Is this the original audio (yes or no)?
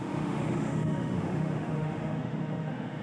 no